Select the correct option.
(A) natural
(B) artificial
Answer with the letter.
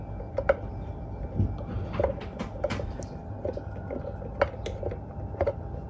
A